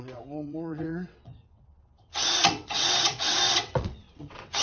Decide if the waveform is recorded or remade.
remade